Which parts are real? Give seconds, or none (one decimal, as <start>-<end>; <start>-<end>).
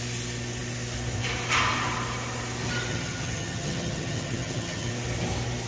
0.0-2.9; 4.9-5.7